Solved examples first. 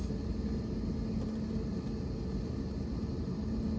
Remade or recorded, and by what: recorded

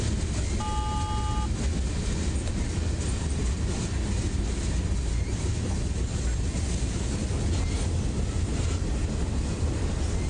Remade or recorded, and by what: recorded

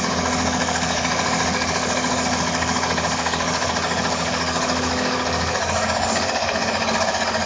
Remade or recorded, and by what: remade, codec, DAC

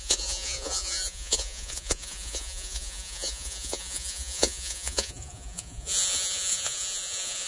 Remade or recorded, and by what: remade, vocoder, Vocos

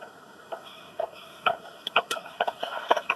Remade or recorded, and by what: remade, codec, SNAC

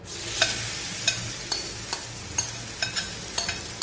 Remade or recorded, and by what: recorded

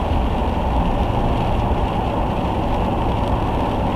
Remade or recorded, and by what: recorded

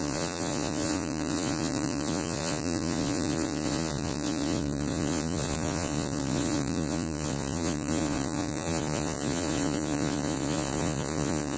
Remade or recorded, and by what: remade, vocoder, Vocos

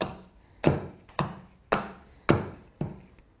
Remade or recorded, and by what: recorded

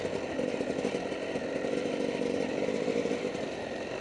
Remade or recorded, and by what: recorded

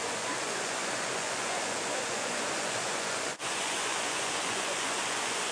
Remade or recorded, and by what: remade, vocoder, Vocos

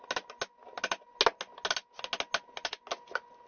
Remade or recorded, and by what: recorded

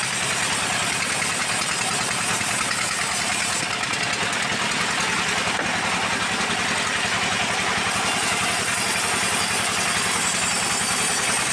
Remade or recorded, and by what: recorded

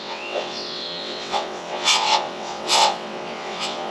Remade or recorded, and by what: remade, vocoder, WaveNeXt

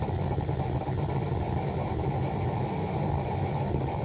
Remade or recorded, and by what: recorded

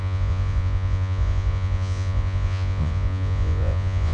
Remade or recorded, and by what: remade, vocoder, Vocos